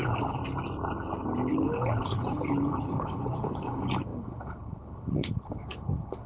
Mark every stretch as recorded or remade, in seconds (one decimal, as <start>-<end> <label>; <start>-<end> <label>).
0.0-0.4 remade; 0.4-1.5 recorded; 1.5-6.3 remade